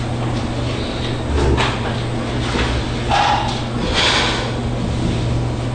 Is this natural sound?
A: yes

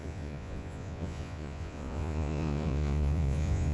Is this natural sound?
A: no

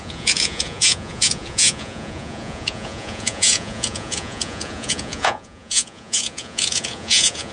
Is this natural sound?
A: no